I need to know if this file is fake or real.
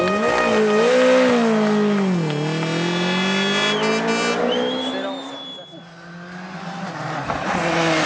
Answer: real